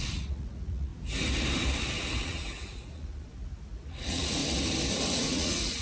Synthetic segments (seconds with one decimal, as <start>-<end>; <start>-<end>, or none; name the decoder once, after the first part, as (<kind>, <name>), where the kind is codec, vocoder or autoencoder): 0.0-0.9 (vocoder, Vocos); 2.2-3.3; 3.9-4.4; 5.1-5.8